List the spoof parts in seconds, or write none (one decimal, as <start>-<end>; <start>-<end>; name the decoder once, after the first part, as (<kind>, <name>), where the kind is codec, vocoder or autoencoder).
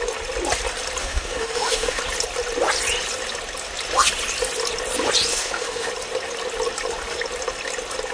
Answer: 1.0-2.0 (autoencoder, DAC-VAE); 5.3-5.9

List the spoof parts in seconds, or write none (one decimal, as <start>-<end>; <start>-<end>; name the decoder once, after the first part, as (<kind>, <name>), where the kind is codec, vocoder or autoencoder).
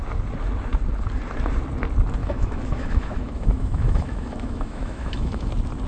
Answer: 2.2-5.5 (autoencoder, DAC-VAE)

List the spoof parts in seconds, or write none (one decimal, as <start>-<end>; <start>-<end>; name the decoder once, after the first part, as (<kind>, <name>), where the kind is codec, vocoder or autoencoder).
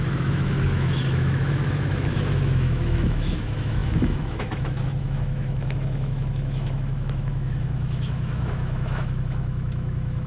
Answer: 0.0-10.3 (autoencoder, DAC-VAE)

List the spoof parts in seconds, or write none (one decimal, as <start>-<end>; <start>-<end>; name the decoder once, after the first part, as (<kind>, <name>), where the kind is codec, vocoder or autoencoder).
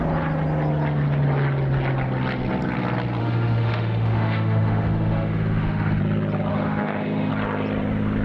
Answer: 3.2-6.0 (autoencoder, DAC-VAE); 6.5-7.3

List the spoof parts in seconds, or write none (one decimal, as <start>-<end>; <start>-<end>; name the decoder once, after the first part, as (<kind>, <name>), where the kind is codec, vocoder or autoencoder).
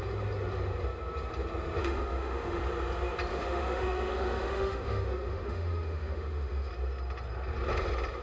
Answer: 1.8-2.6 (autoencoder, DAC-VAE); 3.3-6.7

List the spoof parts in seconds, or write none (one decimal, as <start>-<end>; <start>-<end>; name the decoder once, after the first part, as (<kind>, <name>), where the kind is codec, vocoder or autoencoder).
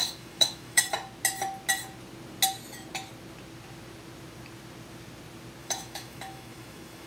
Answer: 0.0-0.8 (autoencoder, DAC-VAE); 5.6-7.1